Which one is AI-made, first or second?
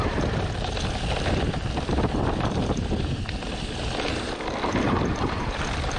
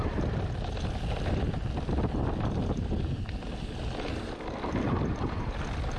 first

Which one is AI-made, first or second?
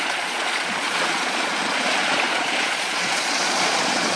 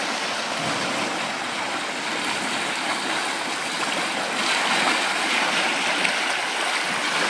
first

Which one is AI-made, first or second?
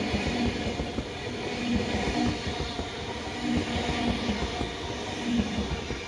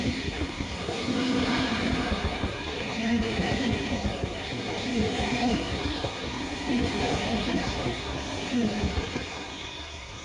second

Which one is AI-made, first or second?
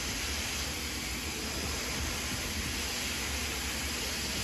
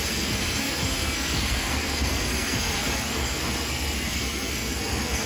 second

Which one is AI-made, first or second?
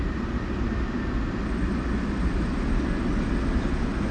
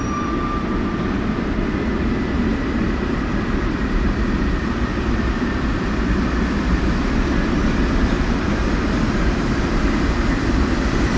second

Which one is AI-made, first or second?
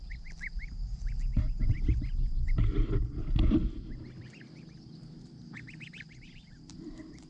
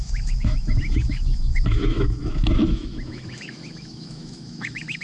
second